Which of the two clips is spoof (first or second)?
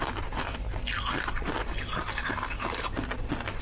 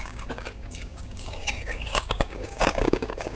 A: second